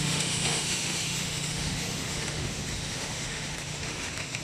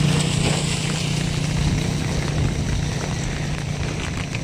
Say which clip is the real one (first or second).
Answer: second